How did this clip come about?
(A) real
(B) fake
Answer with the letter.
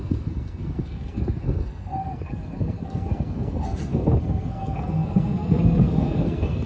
B